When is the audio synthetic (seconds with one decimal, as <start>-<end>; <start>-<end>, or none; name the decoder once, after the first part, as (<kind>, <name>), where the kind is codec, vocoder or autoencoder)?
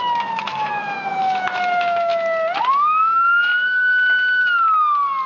0.0-2.1 (autoencoder, DAC-VAE); 2.7-3.5